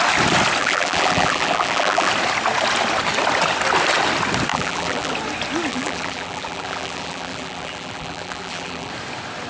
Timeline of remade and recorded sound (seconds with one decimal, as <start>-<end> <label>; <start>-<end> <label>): 0.0-0.6 recorded; 0.6-2.1 remade; 2.1-4.5 recorded; 4.5-5.1 remade; 5.1-5.7 recorded; 5.7-8.9 remade; 8.9-9.5 recorded